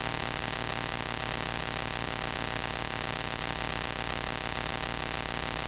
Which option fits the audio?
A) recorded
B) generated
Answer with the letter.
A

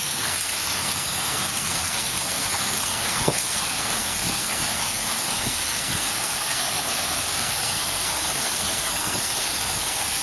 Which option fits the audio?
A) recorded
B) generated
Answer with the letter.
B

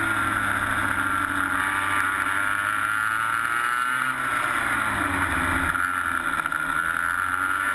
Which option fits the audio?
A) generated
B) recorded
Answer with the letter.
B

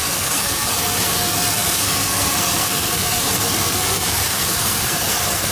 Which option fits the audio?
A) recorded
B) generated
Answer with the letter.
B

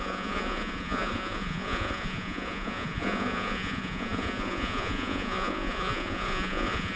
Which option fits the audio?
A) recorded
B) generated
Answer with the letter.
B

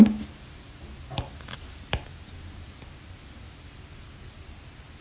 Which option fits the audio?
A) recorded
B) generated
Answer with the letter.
A